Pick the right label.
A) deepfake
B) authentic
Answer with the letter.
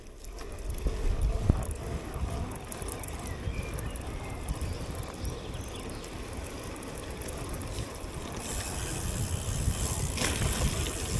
B